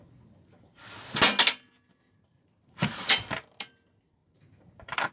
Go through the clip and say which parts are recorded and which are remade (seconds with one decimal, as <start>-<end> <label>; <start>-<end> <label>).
0.0-2.0 recorded; 2.0-3.1 remade; 3.1-4.2 recorded; 4.2-5.1 remade